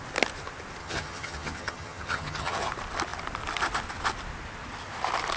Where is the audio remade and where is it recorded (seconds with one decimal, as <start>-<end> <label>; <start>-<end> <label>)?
0.0-0.8 recorded; 0.8-2.7 remade; 2.7-5.4 recorded